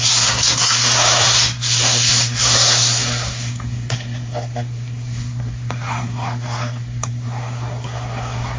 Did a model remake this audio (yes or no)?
yes